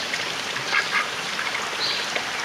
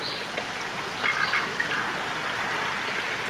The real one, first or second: second